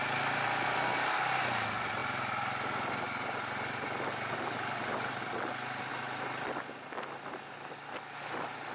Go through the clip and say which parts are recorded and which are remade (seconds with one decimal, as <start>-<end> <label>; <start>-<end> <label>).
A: 0.0-8.7 recorded